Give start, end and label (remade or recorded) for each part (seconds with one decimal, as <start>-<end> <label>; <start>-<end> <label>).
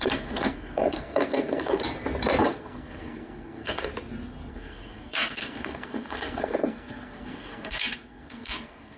0.0-1.8 remade; 1.8-2.4 recorded; 2.4-3.9 remade; 3.9-4.5 recorded; 4.5-9.0 remade